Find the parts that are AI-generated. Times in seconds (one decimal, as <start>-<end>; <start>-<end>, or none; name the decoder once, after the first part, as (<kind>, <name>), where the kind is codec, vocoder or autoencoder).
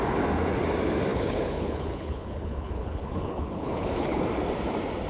1.1-4.2 (codec, HILCodec)